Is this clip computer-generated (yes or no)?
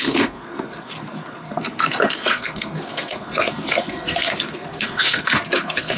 yes